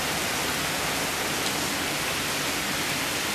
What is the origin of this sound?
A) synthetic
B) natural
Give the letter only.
B